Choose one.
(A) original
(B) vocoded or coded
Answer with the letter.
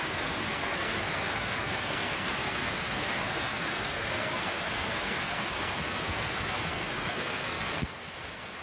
B